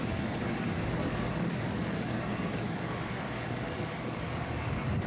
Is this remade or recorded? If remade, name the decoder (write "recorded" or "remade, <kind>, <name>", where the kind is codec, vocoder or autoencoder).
remade, codec, DAC